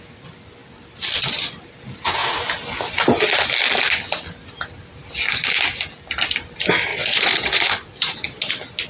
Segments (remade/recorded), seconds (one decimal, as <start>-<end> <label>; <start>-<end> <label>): 0.0-6.9 recorded; 6.9-8.5 remade; 8.5-8.9 recorded